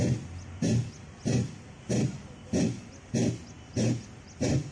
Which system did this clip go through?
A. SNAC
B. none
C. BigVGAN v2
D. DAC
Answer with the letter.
B